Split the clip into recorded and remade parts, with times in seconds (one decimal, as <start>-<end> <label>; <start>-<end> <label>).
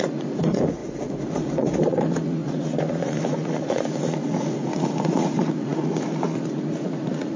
0.0-7.4 remade